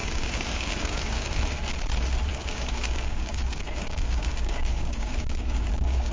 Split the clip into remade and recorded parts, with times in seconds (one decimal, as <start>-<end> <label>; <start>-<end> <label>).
0.0-1.4 remade; 1.4-2.3 recorded; 2.3-6.1 remade